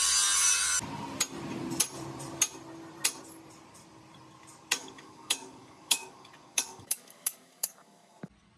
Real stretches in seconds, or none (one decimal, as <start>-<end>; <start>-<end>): 0.0-4.8; 8.2-8.6